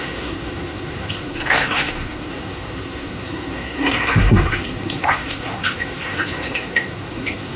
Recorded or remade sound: remade